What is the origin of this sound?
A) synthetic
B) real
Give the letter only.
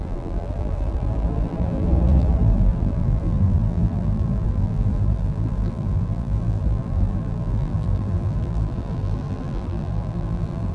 A